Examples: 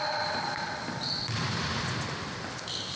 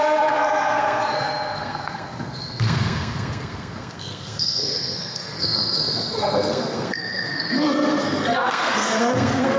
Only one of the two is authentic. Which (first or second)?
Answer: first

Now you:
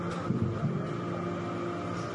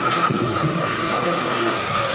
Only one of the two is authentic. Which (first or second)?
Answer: first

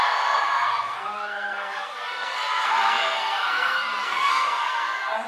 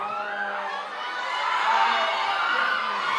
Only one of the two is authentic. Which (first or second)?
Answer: second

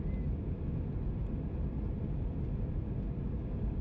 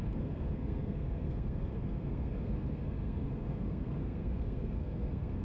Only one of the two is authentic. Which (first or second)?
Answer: first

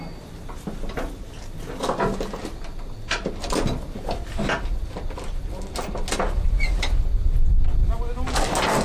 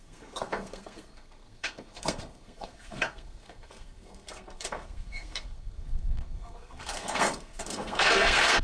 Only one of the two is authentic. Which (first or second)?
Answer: first